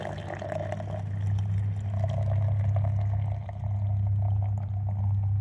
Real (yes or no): yes